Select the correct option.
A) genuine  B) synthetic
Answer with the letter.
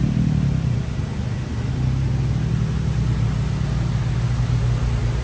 A